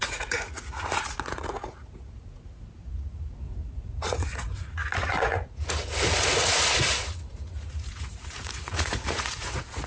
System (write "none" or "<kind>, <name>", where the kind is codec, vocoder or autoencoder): vocoder, Vocos